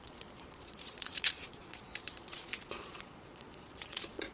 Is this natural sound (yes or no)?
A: no